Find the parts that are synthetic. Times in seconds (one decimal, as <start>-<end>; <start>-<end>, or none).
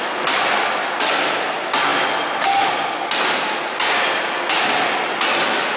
none